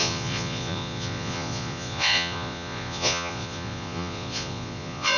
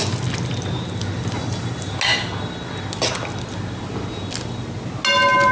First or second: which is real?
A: second